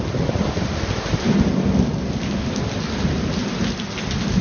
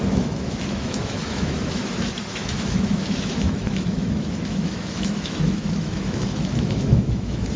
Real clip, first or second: first